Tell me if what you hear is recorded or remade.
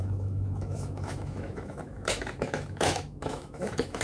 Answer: remade